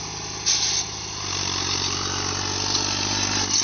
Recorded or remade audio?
recorded